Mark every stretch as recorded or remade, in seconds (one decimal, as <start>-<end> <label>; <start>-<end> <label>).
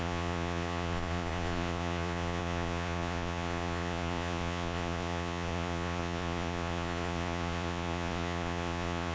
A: 0.0-9.1 remade